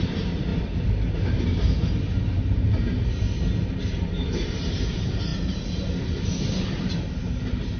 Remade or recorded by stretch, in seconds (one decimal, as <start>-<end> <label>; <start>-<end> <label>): 0.0-7.8 remade

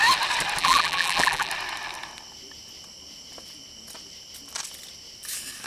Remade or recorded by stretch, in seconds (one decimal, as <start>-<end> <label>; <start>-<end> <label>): 0.0-0.6 recorded; 0.6-1.5 remade; 1.5-5.7 recorded